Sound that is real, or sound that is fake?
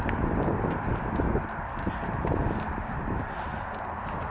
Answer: real